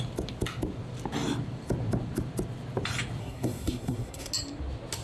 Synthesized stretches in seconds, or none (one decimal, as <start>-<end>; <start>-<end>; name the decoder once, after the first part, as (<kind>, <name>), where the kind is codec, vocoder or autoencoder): 3.2-4.3 (codec, SNAC)